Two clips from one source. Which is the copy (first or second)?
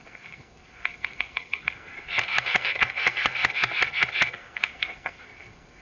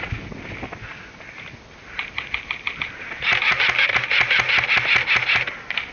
first